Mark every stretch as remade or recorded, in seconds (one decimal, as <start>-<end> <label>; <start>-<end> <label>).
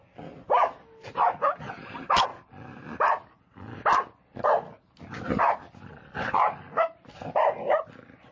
0.0-8.3 recorded